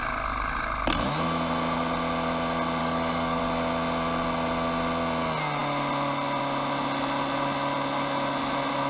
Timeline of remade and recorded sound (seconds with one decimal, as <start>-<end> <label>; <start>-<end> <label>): 0.0-2.8 recorded; 2.8-3.4 remade; 3.4-8.9 recorded